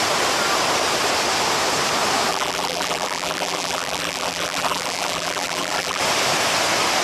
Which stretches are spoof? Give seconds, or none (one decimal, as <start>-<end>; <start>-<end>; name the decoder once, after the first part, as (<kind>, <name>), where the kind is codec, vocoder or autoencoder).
2.3-6.0 (vocoder, BigVGAN v2)